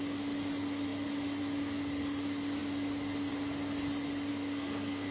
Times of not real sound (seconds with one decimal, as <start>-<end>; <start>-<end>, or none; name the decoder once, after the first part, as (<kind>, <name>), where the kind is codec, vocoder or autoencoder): 4.3-5.1 (codec, SNAC)